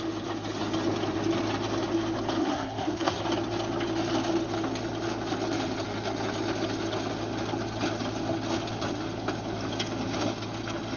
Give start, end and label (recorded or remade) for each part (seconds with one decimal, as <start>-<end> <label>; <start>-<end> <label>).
0.0-2.4 recorded; 2.4-3.2 remade; 3.2-11.0 recorded